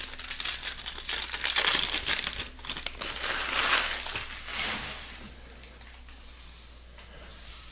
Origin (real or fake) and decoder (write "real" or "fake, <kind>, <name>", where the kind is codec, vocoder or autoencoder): real